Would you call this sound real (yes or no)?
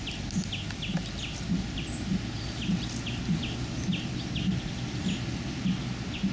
yes